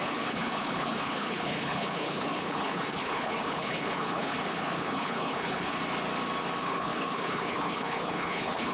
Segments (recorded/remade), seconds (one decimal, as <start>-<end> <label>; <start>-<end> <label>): 0.0-5.8 remade; 5.8-6.6 recorded; 6.6-8.7 remade